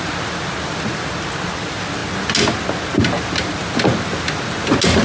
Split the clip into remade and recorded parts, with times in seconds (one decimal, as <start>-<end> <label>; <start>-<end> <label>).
0.0-5.0 recorded